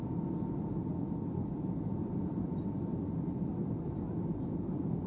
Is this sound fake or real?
real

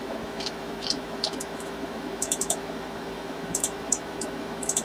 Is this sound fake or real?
fake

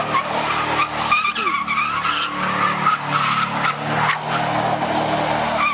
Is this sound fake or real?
real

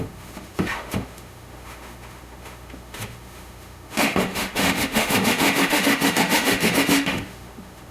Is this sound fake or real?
fake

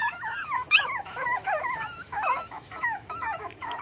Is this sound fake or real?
fake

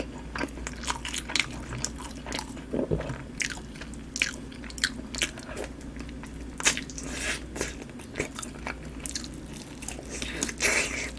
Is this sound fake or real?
real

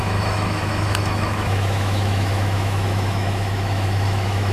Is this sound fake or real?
fake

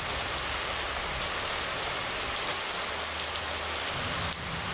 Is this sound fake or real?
real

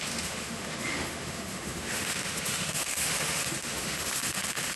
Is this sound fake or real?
fake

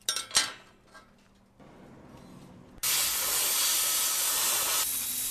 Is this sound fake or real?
real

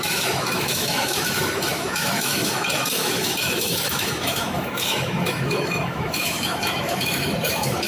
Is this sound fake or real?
fake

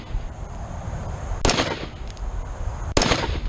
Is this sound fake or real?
real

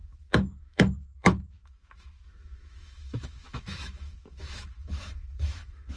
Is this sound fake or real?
fake